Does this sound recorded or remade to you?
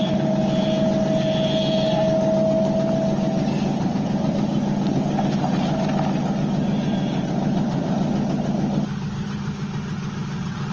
recorded